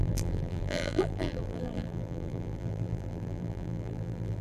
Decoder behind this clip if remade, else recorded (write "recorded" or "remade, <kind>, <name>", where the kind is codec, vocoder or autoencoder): remade, vocoder, BigVGAN v2